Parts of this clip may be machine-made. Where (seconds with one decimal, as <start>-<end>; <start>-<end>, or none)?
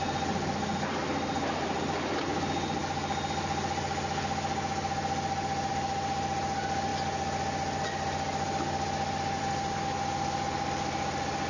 none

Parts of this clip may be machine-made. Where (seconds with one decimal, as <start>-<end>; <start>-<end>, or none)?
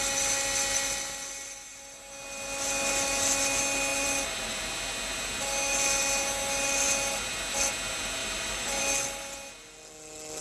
3.9-4.5; 8.2-8.8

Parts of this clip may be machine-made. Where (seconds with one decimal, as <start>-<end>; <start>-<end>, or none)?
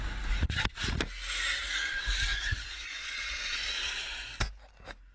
2.3-4.3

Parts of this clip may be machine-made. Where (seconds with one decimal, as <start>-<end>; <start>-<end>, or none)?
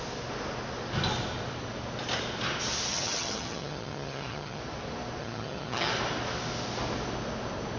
2.9-4.6; 5.2-5.9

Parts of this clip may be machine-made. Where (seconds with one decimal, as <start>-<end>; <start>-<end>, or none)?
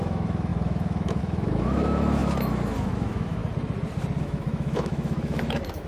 0.0-3.4; 4.2-5.9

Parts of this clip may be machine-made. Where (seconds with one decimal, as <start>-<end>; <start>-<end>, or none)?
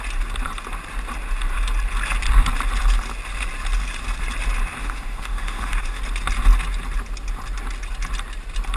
4.8-6.0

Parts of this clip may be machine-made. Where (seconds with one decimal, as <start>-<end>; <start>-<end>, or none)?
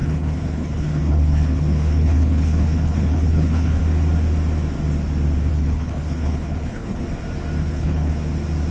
0.0-3.8; 5.5-7.0; 7.6-8.1